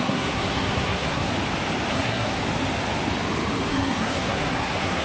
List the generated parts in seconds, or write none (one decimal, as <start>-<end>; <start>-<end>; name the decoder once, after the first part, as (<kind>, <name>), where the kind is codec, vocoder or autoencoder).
0.0-1.3 (codec, SNAC); 1.9-2.4; 3.7-5.0